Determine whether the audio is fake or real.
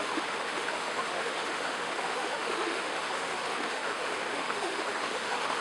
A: fake